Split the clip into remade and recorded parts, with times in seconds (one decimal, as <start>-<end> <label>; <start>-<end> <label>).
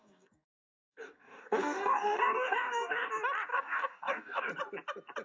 0.0-3.1 remade; 3.1-3.5 recorded; 3.5-4.5 remade; 4.5-5.2 recorded